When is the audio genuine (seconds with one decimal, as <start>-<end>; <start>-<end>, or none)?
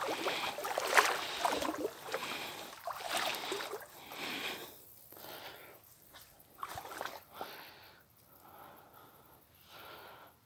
0.0-10.5